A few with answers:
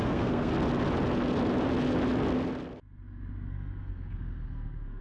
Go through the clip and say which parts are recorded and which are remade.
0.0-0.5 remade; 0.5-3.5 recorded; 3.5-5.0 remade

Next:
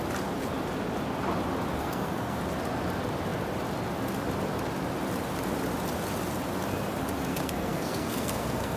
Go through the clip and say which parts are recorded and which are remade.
0.0-1.8 recorded; 1.8-2.4 remade; 2.4-7.3 recorded; 7.3-8.8 remade

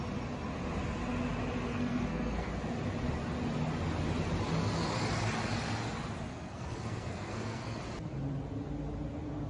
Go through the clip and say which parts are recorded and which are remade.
0.0-1.7 recorded; 1.7-2.5 remade; 2.5-6.3 recorded; 6.3-7.8 remade; 7.8-9.5 recorded

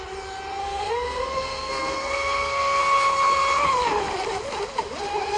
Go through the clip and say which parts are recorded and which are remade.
0.0-0.6 recorded; 0.6-2.8 remade; 2.8-5.4 recorded

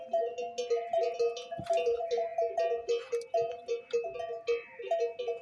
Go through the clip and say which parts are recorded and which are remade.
0.0-5.4 recorded

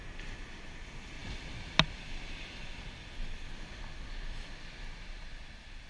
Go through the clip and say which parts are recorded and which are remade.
0.0-5.9 recorded

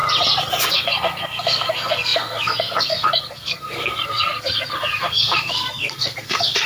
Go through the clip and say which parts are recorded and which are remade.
0.0-0.7 recorded; 0.7-6.7 remade

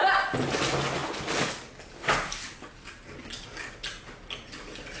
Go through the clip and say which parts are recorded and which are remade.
0.0-5.0 recorded